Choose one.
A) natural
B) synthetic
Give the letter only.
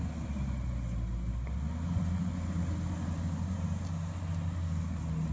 A